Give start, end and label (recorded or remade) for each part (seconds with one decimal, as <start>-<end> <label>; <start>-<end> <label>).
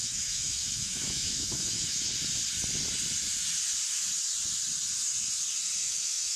0.0-2.0 remade; 2.0-5.8 recorded; 5.8-6.4 remade